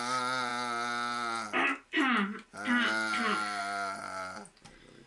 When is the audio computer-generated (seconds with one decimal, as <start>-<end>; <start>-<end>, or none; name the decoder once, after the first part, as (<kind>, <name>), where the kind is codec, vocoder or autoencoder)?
none